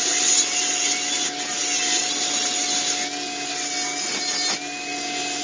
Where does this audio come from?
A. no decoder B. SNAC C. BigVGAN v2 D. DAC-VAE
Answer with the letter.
A